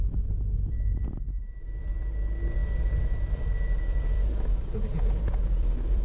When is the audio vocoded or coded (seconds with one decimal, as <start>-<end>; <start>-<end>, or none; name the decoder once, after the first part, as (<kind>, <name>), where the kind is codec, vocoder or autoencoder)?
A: none